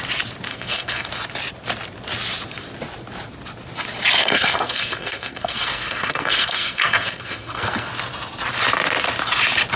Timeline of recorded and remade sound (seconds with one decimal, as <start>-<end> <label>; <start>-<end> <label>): 0.0-0.5 recorded; 0.5-1.1 remade; 1.1-4.2 recorded; 4.2-7.9 remade; 7.9-9.8 recorded